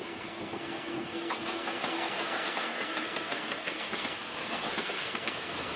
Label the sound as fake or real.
fake